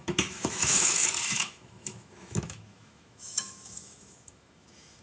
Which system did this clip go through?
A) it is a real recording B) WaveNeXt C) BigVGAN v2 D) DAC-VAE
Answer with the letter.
D